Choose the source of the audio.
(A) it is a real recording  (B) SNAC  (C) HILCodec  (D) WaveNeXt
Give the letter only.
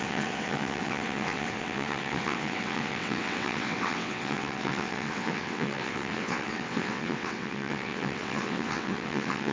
D